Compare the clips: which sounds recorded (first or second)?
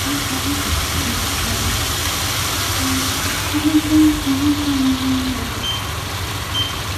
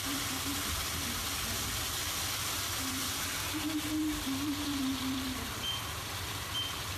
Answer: first